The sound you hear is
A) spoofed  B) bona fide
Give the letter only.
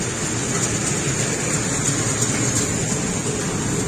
B